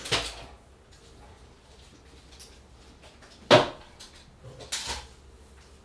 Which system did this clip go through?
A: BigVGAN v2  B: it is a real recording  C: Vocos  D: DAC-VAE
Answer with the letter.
B